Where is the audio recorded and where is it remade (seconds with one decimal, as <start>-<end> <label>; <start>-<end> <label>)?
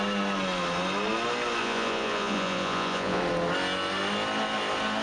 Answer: 0.0-1.6 recorded; 1.6-3.2 remade; 3.2-5.0 recorded